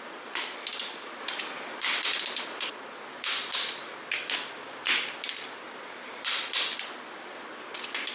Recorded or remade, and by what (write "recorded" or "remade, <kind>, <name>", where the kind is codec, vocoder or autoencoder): remade, vocoder, BigVGAN v2